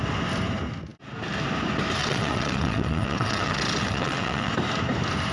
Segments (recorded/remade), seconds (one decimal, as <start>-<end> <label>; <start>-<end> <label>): 0.0-2.0 recorded; 2.0-4.5 remade; 4.5-5.3 recorded